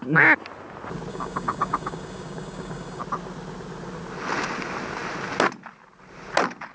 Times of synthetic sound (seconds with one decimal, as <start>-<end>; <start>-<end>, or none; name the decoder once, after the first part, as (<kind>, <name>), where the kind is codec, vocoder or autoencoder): 1.1-3.0 (codec, DAC)